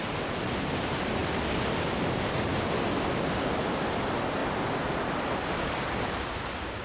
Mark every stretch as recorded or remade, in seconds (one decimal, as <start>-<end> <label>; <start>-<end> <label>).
0.0-1.2 remade; 1.2-3.3 recorded; 3.3-4.4 remade; 4.4-5.4 recorded; 5.4-6.8 remade